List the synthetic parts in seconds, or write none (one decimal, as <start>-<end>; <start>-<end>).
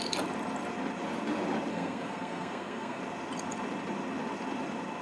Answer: 1.7-3.0